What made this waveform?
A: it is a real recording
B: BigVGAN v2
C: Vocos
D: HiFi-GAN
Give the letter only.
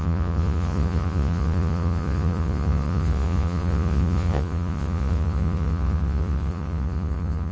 C